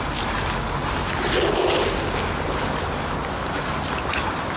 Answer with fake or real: real